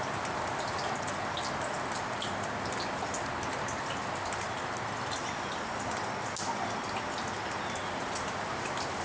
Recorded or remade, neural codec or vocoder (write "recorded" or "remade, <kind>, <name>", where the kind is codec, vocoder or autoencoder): recorded